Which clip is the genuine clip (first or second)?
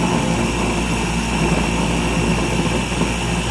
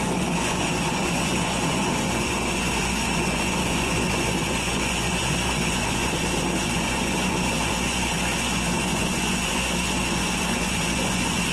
first